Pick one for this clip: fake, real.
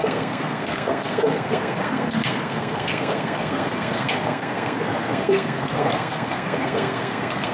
fake